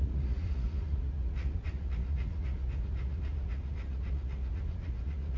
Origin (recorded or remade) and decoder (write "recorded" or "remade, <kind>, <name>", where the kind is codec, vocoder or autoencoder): remade, vocoder, Vocos